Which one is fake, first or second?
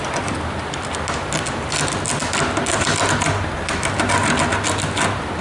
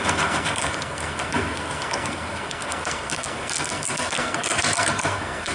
second